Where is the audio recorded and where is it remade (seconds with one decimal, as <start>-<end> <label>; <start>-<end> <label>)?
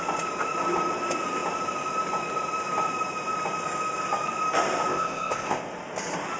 0.0-4.9 recorded; 4.9-5.6 remade; 5.6-6.4 recorded